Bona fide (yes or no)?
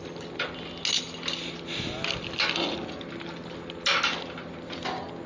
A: yes